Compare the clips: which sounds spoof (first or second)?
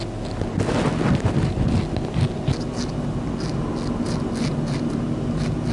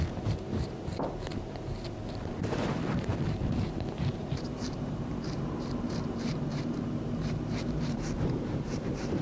second